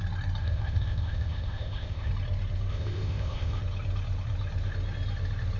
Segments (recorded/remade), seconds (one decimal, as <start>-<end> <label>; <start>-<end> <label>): 0.0-0.4 recorded; 0.4-2.1 remade; 2.1-2.7 recorded; 2.7-3.6 remade; 3.6-5.6 recorded